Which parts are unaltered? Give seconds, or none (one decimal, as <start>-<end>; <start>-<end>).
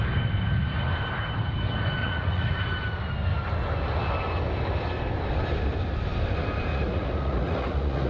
0.0-2.0; 2.6-6.7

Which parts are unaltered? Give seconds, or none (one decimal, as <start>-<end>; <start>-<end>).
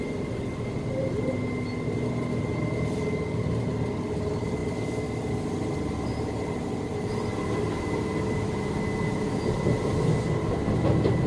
0.0-11.3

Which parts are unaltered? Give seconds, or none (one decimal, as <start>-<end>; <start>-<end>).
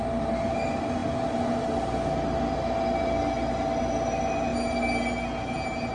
0.0-5.9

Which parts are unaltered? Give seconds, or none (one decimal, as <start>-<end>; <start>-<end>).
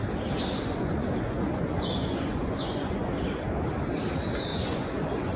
0.0-0.5; 3.1-4.5